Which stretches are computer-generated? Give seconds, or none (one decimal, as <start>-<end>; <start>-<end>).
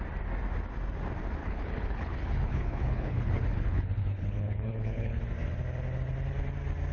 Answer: 1.4-5.2